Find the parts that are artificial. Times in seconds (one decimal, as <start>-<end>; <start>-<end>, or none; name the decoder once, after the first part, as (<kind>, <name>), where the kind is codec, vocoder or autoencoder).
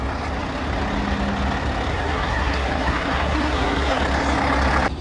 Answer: 1.9-4.0 (codec, SNAC)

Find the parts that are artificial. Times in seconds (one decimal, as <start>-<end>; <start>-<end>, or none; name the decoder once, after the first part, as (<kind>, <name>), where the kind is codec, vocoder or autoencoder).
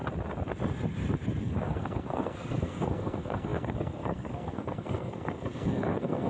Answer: 1.4-6.3 (codec, SNAC)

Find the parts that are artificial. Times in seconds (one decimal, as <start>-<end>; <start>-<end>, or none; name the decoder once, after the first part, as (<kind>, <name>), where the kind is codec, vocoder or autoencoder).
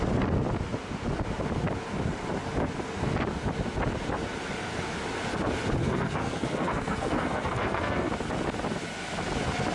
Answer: 5.8-8.1 (codec, SNAC)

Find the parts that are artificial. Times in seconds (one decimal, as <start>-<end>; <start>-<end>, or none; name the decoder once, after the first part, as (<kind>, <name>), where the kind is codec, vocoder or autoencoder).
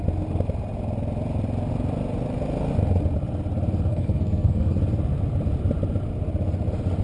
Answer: 3.9-4.7 (codec, SNAC)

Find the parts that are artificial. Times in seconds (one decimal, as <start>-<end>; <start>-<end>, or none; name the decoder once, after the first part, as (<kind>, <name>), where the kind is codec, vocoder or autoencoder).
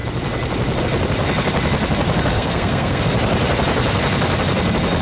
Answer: 2.3-3.0 (codec, SNAC)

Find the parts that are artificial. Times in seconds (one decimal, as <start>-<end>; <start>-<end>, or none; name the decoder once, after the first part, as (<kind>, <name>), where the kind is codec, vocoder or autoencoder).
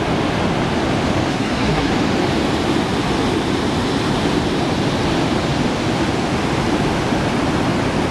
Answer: 1.3-1.9 (codec, SNAC)